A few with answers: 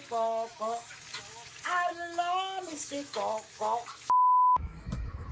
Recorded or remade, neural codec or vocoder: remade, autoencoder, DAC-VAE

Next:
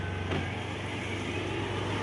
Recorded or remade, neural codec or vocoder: recorded